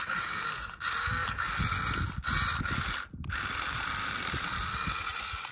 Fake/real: real